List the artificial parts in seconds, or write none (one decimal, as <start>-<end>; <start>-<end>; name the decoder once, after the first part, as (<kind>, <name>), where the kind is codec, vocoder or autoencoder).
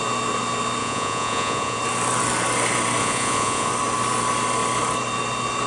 0.8-1.8 (vocoder, Vocos); 3.0-3.7